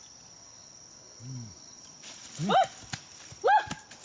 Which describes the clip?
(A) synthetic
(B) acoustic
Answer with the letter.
B